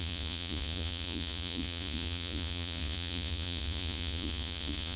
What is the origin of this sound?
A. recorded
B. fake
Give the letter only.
B